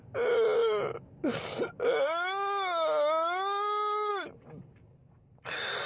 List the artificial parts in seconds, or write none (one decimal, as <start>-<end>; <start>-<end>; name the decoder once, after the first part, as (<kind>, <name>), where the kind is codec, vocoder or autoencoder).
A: none